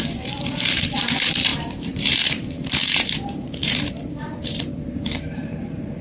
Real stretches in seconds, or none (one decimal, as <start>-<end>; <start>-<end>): none